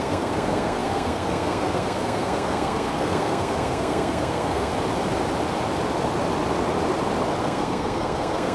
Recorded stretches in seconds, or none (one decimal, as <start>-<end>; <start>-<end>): 4.7-7.4